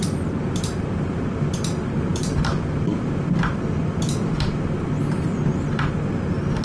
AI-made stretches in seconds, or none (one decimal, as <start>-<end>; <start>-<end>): 2.1-5.6